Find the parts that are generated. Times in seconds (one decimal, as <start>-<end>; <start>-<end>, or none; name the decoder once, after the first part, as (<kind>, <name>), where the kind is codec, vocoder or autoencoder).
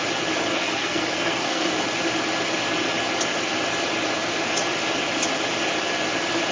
0.5-1.7 (codec, SNAC)